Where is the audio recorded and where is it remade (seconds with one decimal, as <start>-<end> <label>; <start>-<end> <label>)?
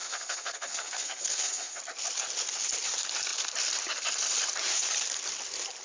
0.0-1.8 remade; 1.8-5.8 recorded